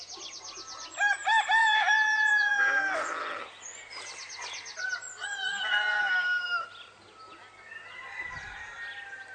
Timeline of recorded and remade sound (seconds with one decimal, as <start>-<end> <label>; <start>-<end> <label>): 0.0-1.6 recorded; 1.6-2.8 remade; 2.8-5.5 recorded; 5.5-6.1 remade; 6.1-9.3 recorded